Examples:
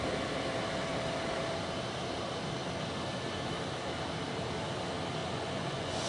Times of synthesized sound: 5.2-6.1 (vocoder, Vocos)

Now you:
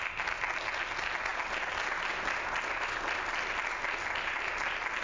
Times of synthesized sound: none

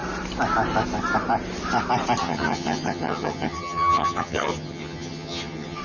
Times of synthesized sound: 2.2-5.8 (vocoder, HiFi-GAN)

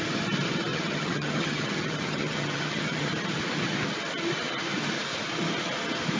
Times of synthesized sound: 0.7-3.1 (vocoder, HiFi-GAN)

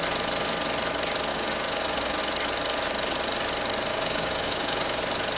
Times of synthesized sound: 1.3-2.2 (codec, DAC); 3.9-5.0

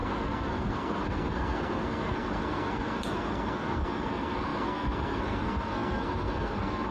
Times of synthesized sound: 0.0-6.9 (codec, SNAC)

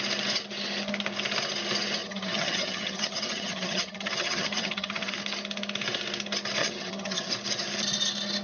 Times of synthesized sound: 2.0-5.1 (vocoder, HiFi-GAN); 6.6-7.3